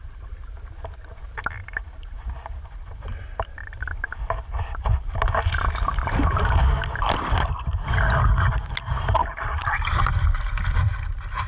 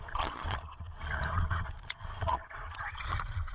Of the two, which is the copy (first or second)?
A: second